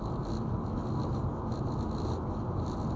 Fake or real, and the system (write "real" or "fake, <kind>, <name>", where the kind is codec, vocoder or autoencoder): real